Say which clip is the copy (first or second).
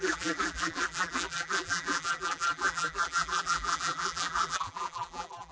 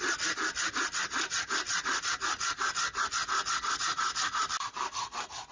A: first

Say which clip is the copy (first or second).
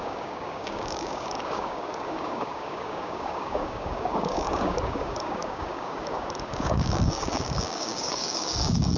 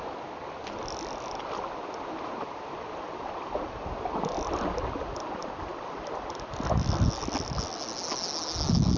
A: first